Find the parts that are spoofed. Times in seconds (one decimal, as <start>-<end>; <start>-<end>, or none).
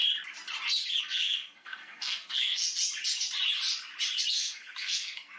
1.0-2.6; 4.3-5.4